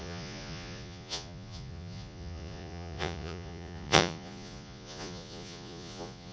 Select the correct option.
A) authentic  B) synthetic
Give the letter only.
B